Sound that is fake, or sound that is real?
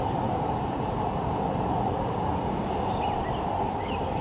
real